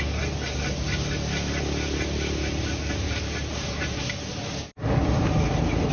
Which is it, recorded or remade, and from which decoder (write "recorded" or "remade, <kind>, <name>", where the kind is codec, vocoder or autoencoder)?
recorded